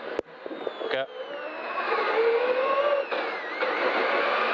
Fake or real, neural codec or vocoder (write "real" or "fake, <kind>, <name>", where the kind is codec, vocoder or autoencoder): real